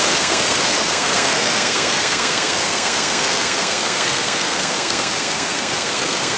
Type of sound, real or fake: fake